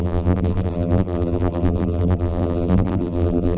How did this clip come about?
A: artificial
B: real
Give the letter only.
A